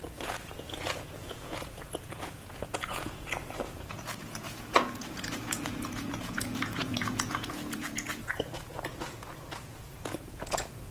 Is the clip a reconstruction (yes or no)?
yes